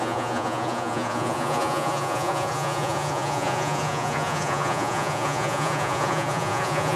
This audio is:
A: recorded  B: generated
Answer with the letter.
B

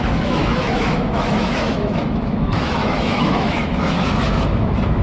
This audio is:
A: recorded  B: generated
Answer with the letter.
B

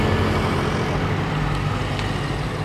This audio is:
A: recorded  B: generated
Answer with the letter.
A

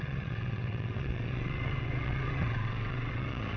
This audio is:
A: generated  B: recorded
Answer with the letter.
A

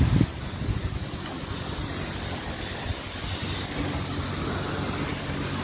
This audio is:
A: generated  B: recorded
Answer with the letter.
B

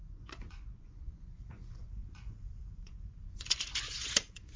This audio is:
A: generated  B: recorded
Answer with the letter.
A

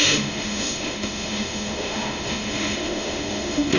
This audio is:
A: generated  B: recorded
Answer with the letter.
A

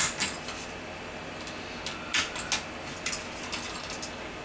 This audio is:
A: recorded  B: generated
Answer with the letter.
A